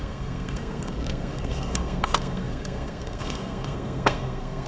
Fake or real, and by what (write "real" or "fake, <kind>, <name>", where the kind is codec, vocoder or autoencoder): fake, codec, SNAC